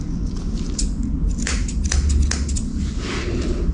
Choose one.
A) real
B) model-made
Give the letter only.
A